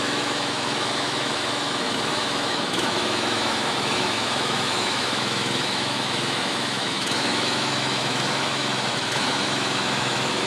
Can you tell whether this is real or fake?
fake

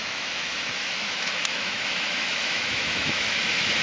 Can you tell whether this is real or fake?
fake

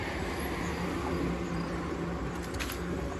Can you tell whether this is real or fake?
real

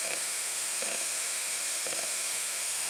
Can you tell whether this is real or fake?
fake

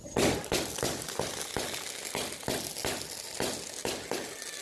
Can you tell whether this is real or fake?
real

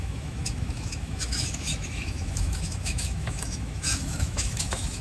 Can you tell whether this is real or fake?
fake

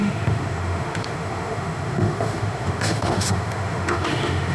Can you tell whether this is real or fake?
fake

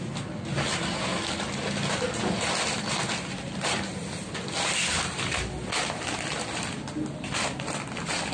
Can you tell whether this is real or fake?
real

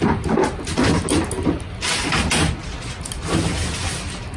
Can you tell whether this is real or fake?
real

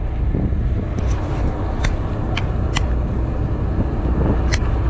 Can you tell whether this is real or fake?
real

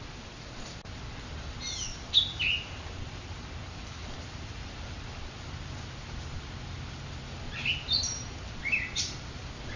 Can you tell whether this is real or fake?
real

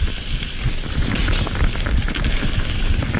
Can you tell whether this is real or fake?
real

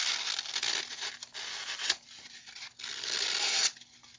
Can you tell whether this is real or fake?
real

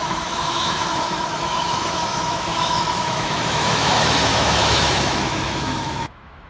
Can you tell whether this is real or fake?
fake